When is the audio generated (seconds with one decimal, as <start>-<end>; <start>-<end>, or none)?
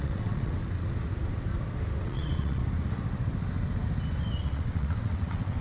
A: 0.0-0.6; 2.0-2.6; 4.4-5.6